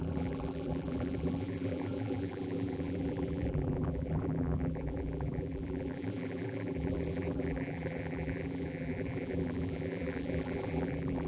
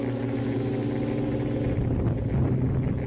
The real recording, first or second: second